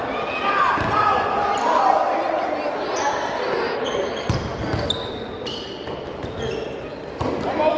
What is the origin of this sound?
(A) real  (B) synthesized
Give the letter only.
A